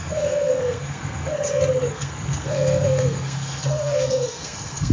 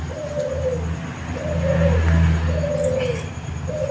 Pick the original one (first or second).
second